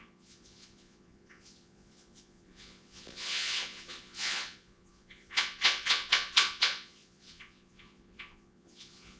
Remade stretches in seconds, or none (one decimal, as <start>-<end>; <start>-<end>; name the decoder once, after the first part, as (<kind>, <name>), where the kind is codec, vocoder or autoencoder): 0.0-9.2 (vocoder, Vocos)